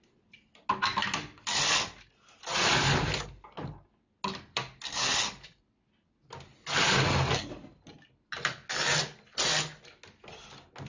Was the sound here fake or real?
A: real